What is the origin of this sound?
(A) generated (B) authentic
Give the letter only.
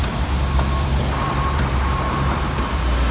A